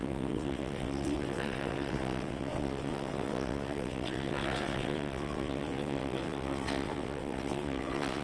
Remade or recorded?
remade